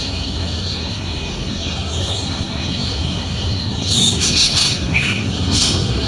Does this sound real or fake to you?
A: fake